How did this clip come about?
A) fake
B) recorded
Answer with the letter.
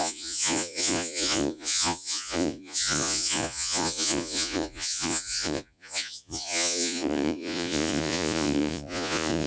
A